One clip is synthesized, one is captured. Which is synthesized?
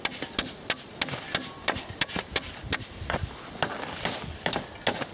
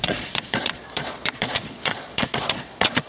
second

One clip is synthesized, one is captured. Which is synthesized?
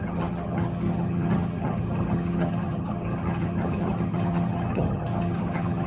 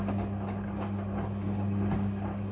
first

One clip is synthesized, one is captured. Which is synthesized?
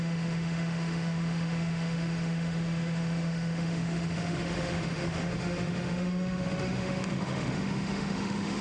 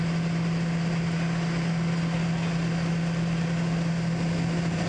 first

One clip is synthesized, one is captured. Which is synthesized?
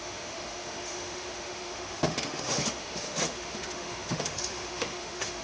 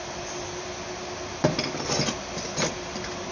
first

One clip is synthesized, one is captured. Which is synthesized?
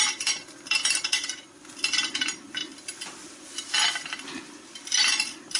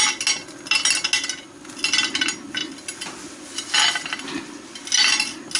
first